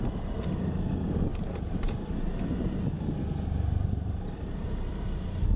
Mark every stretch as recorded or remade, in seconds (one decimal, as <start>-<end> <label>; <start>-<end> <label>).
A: 0.0-5.6 recorded